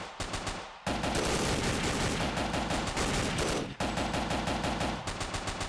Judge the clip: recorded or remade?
recorded